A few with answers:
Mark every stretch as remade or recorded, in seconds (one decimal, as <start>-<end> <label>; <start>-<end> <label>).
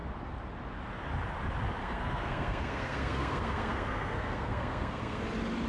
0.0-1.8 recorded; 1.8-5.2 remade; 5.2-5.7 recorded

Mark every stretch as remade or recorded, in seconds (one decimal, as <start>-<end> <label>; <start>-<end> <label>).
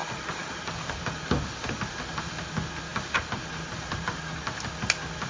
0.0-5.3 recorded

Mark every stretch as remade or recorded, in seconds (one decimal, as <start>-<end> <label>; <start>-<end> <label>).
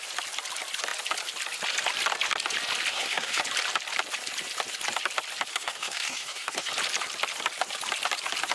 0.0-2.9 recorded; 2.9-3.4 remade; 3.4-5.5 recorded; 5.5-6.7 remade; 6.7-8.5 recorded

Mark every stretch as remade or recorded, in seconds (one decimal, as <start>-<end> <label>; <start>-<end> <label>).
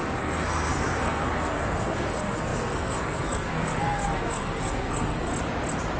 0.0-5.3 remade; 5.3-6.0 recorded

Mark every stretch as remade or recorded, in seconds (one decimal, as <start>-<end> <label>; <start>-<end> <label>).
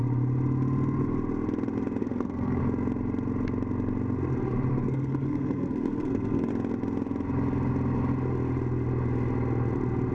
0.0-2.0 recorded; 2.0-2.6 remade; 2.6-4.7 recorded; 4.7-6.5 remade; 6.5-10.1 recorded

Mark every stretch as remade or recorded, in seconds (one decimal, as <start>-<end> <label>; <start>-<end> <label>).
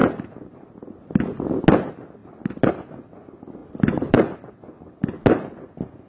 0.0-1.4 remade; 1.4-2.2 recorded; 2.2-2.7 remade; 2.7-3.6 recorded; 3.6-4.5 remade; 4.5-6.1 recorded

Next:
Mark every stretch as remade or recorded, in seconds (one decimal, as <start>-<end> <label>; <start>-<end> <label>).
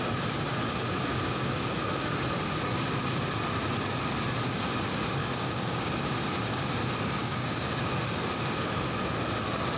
0.0-5.2 recorded; 5.2-5.8 remade; 5.8-7.2 recorded; 7.2-7.9 remade; 7.9-9.8 recorded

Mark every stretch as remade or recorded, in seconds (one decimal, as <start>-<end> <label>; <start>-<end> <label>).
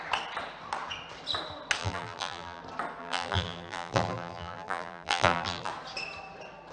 0.0-1.8 recorded; 1.8-2.6 remade; 2.6-3.0 recorded; 3.0-5.7 remade; 5.7-6.7 recorded